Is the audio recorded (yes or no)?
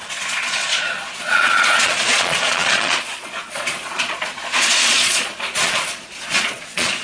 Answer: no